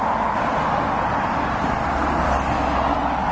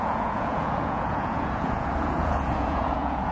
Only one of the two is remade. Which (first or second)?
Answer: second